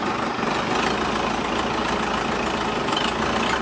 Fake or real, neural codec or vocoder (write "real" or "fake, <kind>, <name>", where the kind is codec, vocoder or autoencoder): real